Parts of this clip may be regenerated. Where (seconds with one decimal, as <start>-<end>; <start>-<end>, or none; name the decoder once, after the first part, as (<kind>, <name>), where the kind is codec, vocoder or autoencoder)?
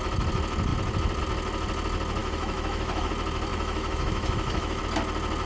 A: 2.2-3.1 (autoencoder, DAC-VAE); 3.5-4.8